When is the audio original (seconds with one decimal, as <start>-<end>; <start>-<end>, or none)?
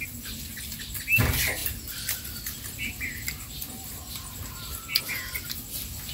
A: 0.0-6.1